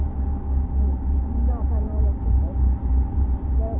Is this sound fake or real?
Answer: fake